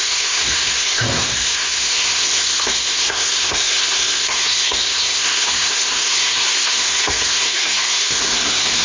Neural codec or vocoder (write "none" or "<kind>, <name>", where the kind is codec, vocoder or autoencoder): codec, SNAC